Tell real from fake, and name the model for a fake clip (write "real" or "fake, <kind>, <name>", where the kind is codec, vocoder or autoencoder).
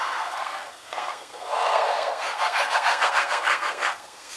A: fake, codec, SNAC